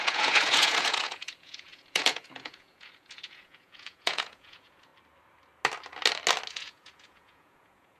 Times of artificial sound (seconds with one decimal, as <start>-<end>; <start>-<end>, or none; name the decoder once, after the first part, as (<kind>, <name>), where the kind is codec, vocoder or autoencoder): 0.0-4.9 (vocoder, Vocos); 6.5-8.0

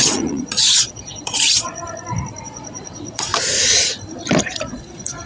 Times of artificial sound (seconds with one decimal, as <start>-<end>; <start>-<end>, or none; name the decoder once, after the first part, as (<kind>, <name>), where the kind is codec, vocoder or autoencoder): 0.0-1.8 (vocoder, Vocos); 2.4-3.3; 4.4-5.3

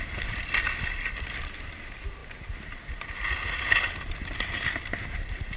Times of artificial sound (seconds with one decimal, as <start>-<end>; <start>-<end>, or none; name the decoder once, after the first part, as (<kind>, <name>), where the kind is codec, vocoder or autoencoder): none

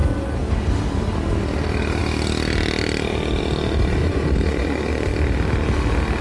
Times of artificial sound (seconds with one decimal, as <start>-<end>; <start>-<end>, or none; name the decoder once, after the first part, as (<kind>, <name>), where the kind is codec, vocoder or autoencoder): 4.0-4.9 (vocoder, Vocos)